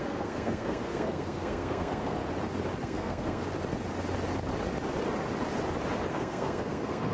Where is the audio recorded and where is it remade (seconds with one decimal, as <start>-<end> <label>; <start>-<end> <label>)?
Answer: 0.0-2.2 remade; 2.2-2.8 recorded; 2.8-3.4 remade; 3.4-6.1 recorded; 6.1-7.1 remade